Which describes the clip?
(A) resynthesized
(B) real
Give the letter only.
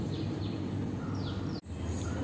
B